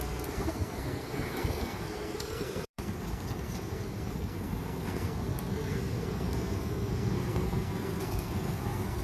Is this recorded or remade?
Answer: remade